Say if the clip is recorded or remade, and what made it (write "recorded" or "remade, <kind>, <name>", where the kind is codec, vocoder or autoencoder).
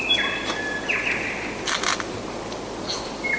recorded